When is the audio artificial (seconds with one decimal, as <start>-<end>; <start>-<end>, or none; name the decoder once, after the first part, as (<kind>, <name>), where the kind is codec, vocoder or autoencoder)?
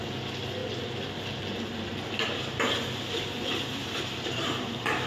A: 1.9-5.1 (vocoder, BigVGAN v2)